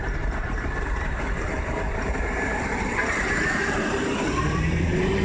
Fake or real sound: fake